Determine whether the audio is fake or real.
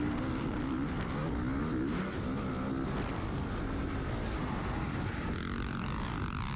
real